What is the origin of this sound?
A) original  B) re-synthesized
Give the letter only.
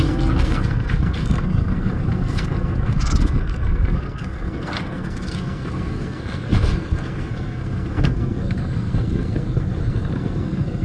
B